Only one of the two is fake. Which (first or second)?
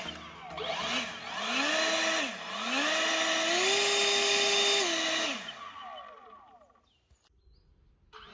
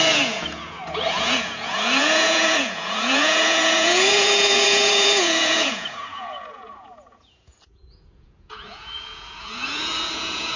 second